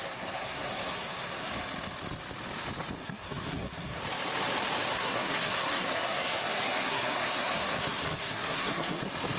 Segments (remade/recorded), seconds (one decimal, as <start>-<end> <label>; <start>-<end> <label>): 0.0-1.5 remade; 1.5-3.0 recorded; 3.0-4.0 remade; 4.0-4.9 recorded; 4.9-9.0 remade; 9.0-9.4 recorded